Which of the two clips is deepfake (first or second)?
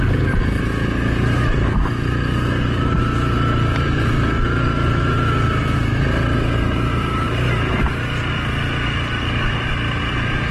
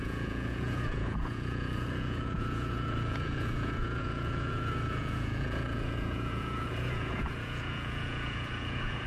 second